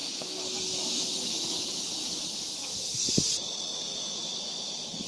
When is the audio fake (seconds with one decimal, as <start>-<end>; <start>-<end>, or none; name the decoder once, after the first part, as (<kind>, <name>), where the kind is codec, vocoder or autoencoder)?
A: 0.0-3.1 (autoencoder, DAC-VAE); 3.9-5.1